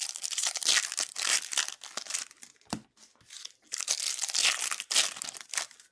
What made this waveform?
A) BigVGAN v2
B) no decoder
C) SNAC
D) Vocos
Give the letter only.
B